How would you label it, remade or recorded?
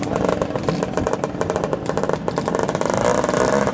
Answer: recorded